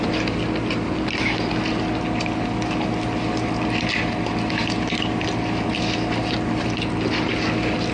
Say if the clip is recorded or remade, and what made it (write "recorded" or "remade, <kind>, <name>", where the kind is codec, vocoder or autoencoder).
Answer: recorded